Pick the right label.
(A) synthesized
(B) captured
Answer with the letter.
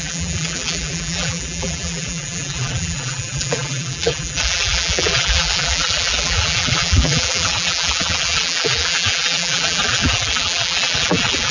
A